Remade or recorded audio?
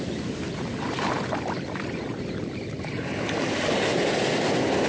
recorded